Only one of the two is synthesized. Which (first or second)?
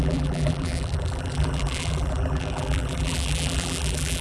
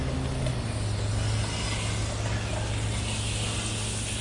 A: first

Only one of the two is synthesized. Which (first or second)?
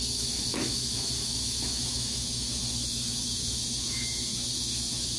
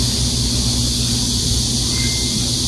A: first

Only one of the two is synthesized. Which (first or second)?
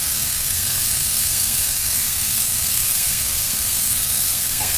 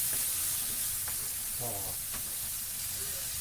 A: first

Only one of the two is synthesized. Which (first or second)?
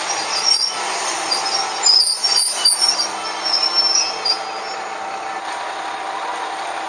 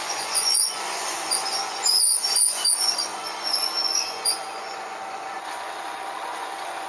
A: second